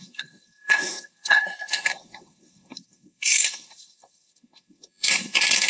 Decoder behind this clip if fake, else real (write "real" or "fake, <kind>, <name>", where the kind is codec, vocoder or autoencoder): fake, codec, SNAC